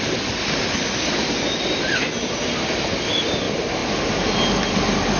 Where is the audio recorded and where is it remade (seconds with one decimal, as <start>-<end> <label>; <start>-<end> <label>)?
0.0-5.2 recorded

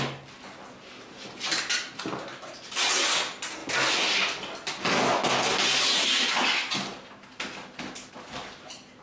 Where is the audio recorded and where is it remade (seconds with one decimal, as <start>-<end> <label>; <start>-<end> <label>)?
0.0-9.0 recorded

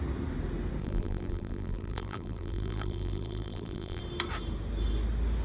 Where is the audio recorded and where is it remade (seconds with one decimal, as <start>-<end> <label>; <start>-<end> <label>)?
0.0-0.8 recorded; 0.8-4.0 remade; 4.0-5.4 recorded